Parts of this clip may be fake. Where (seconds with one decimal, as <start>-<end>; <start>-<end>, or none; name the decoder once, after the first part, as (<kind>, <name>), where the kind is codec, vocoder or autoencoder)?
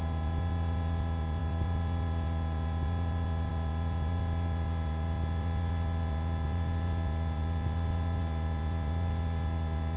none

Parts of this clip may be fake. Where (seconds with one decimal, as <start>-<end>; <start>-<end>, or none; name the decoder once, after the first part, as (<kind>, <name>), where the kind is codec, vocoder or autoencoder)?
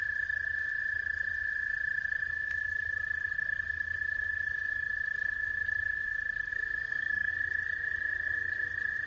6.5-7.3 (codec, SNAC)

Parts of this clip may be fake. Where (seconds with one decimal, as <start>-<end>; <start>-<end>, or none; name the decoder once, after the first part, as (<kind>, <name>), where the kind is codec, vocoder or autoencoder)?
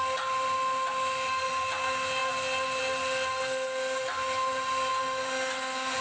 none